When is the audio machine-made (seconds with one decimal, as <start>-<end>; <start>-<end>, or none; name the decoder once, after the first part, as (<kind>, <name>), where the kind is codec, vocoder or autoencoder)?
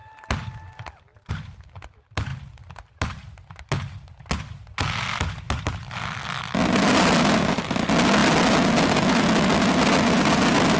none